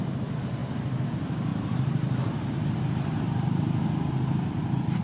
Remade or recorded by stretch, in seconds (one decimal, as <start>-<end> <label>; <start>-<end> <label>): 0.0-0.6 recorded; 0.6-1.1 remade; 1.1-1.5 recorded; 1.5-4.5 remade; 4.5-5.0 recorded